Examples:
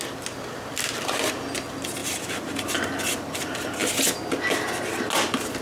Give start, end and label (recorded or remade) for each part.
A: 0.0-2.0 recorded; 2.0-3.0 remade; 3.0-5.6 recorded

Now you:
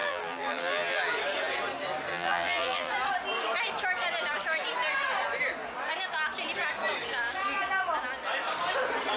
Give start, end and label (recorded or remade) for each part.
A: 0.0-1.0 remade; 1.0-2.1 recorded; 2.1-2.9 remade; 2.9-9.2 recorded

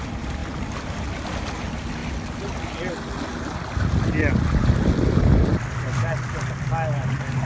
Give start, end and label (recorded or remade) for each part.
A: 0.0-7.5 recorded

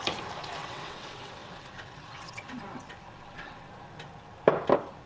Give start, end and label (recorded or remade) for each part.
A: 0.0-0.6 recorded; 0.6-3.7 remade; 3.7-5.1 recorded

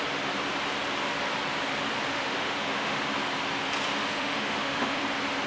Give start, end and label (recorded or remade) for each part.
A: 0.0-2.1 recorded; 2.1-3.0 remade; 3.0-4.0 recorded; 4.0-5.0 remade; 5.0-5.5 recorded

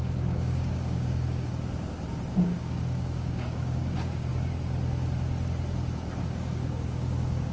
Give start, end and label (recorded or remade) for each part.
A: 0.0-1.5 remade; 1.5-2.3 recorded; 2.3-4.3 remade; 4.3-6.2 recorded; 6.2-7.5 remade

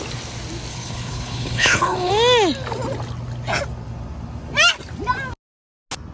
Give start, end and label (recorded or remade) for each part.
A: 0.0-0.7 recorded; 0.7-2.1 remade; 2.1-6.1 recorded

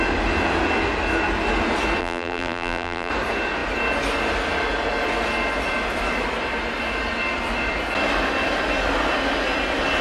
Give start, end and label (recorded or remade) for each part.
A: 0.0-2.0 recorded; 2.0-3.1 remade; 3.1-10.0 recorded